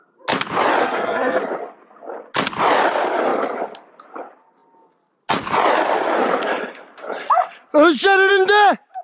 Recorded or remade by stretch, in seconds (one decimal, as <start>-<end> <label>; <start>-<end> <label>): 0.0-0.8 recorded; 0.8-1.4 remade; 1.4-9.0 recorded